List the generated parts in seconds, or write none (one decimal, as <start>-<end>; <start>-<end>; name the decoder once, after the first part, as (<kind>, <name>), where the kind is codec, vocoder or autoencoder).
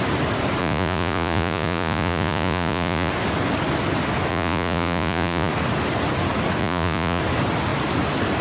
0.6-3.1 (vocoder, Vocos); 4.3-5.5; 6.6-7.2